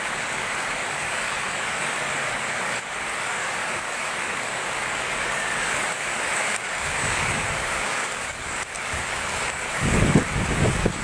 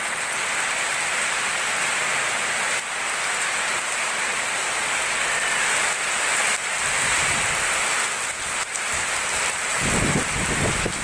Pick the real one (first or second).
second